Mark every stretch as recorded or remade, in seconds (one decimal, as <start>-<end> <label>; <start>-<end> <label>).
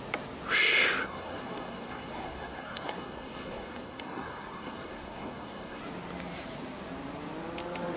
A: 0.0-1.0 recorded; 1.0-5.8 remade; 5.8-8.0 recorded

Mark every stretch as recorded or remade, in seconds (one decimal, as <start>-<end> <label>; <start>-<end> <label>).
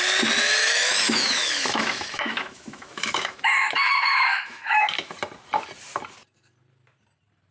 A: 0.0-0.6 recorded; 0.6-5.1 remade; 5.1-7.5 recorded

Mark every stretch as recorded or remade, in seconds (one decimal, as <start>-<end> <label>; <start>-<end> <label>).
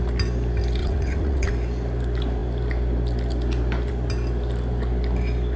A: 0.0-0.8 recorded; 0.8-1.5 remade; 1.5-5.6 recorded